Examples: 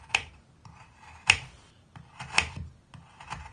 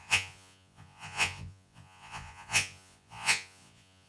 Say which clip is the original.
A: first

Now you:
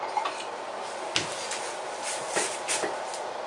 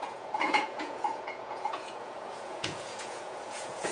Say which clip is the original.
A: first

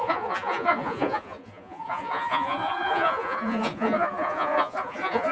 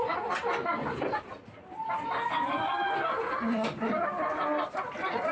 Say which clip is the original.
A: second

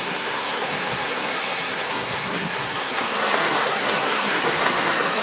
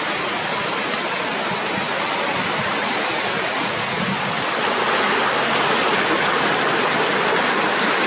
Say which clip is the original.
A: second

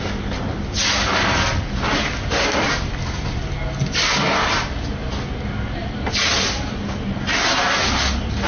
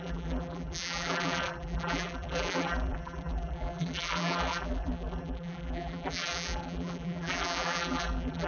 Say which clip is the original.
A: first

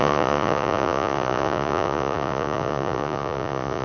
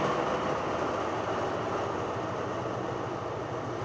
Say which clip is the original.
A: second